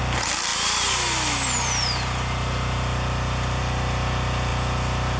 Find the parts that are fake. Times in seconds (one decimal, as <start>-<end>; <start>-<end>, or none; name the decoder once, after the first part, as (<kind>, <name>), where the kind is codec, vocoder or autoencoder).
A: none